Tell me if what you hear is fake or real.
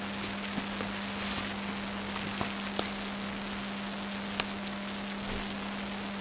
real